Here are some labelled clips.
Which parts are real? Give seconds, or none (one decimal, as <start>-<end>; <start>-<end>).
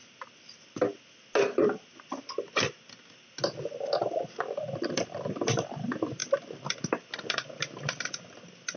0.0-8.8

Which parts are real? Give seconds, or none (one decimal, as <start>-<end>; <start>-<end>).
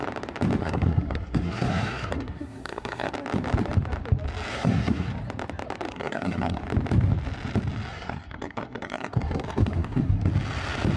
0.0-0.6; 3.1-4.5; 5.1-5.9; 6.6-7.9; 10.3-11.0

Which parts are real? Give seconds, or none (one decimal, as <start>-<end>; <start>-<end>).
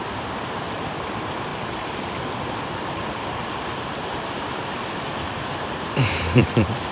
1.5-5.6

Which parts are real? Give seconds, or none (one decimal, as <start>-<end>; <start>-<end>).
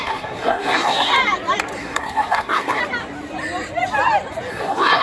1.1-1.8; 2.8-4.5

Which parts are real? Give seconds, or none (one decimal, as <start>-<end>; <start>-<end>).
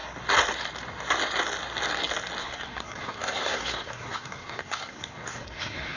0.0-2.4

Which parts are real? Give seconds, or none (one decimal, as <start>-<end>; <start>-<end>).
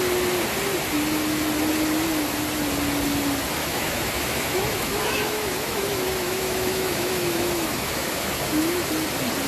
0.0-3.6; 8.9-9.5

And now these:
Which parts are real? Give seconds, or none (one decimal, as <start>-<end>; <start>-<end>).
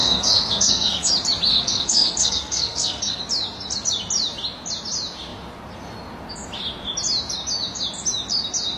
1.1-1.5; 3.2-8.8